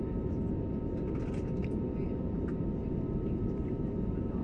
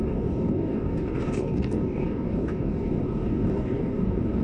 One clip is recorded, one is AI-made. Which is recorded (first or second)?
first